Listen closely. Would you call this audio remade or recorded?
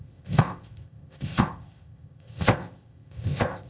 remade